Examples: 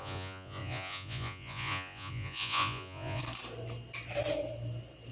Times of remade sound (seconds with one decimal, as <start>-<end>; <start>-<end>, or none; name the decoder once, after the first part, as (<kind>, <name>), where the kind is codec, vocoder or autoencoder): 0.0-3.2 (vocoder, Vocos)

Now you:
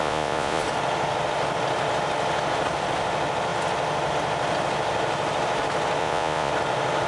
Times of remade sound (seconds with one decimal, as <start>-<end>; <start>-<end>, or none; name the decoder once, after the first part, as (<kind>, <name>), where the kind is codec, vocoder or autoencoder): 0.0-0.6 (vocoder, Vocos); 6.0-6.5

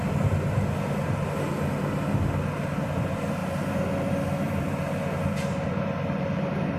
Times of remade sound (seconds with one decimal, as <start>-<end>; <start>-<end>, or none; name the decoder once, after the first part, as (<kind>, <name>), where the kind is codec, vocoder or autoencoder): none

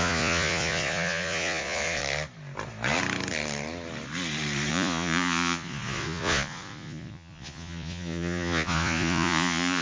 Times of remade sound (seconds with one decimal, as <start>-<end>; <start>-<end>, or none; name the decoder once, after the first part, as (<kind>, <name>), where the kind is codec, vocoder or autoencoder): 0.0-2.0 (vocoder, Vocos); 4.7-9.8

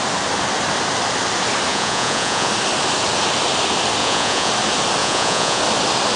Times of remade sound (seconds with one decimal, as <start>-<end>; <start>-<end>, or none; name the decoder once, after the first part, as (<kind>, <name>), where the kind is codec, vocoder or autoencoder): 1.7-2.5 (vocoder, Vocos); 4.0-4.5; 5.0-5.6